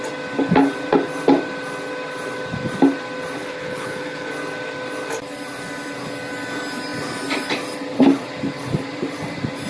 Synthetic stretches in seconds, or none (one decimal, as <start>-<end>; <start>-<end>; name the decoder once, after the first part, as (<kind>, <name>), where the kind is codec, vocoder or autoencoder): 3.4-4.3 (codec, HILCodec)